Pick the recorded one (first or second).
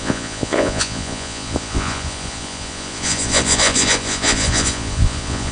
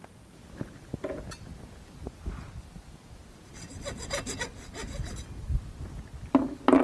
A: second